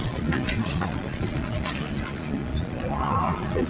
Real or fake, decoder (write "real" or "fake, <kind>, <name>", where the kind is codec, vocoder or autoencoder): fake, vocoder, Vocos